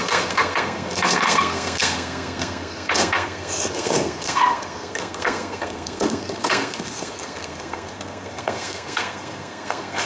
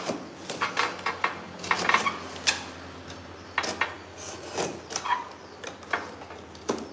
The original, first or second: second